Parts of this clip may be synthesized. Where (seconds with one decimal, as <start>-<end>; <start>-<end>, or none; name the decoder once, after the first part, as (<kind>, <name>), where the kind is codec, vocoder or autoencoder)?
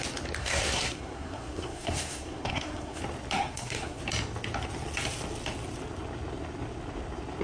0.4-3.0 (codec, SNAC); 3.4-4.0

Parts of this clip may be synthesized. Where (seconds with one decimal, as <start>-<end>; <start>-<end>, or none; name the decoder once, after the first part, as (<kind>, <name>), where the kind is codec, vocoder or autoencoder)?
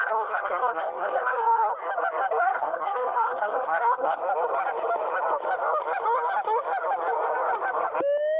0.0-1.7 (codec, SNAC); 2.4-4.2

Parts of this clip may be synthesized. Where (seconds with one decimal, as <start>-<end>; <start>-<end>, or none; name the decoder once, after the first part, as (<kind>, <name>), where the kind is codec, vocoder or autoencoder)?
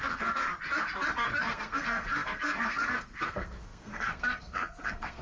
0.0-0.5 (codec, SNAC); 1.4-5.2